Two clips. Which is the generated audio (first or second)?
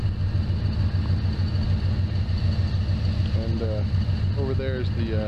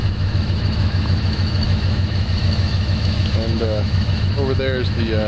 second